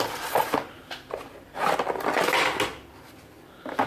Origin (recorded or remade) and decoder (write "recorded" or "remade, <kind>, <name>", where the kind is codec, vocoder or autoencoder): recorded